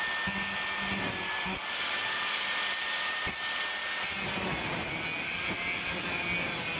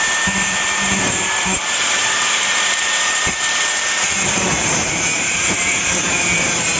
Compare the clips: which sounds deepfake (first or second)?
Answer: second